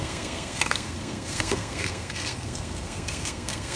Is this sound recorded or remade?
remade